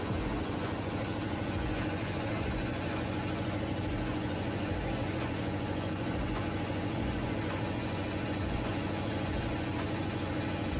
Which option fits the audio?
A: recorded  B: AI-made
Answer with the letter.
B